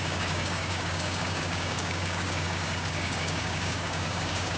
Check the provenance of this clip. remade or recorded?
remade